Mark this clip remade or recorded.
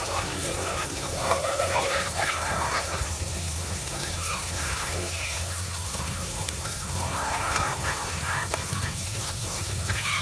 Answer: remade